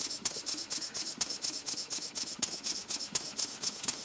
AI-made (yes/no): yes